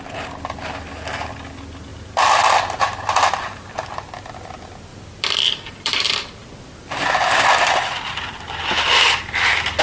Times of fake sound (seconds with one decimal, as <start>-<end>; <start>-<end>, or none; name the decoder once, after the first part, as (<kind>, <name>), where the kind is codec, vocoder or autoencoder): 4.9-9.8 (vocoder, BigVGAN v2)